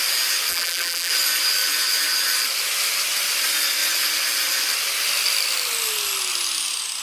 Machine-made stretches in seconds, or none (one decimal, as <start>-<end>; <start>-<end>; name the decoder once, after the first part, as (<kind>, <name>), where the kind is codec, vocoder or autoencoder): 0.5-1.1 (vocoder, BigVGAN v2)